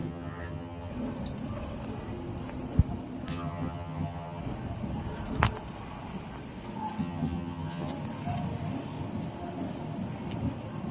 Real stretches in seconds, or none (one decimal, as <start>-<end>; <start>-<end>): 0.9-3.3; 4.4-7.0; 7.9-10.9